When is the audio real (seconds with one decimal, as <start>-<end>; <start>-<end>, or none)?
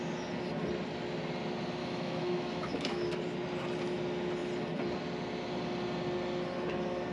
0.0-1.8; 3.2-7.1